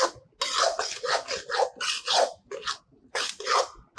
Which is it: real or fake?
real